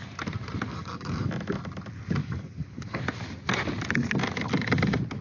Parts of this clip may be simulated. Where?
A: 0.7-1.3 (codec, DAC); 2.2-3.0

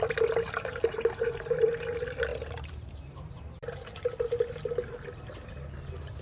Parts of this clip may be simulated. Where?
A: 2.3-3.4 (vocoder, BigVGAN v2)

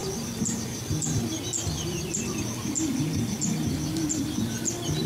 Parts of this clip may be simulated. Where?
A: none

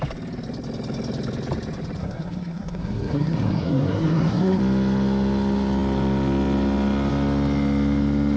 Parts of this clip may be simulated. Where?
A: 2.0-4.6 (codec, SNAC)

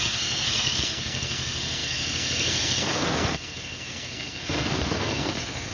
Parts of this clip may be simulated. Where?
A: 0.0-5.7 (codec, SNAC)

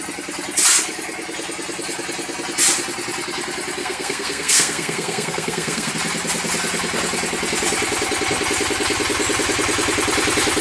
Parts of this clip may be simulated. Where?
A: 3.8-5.9 (codec, SNAC)

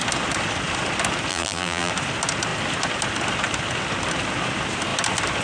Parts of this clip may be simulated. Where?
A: 1.3-1.9 (vocoder, BigVGAN v2)